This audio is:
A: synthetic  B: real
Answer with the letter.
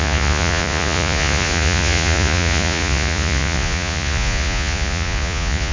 A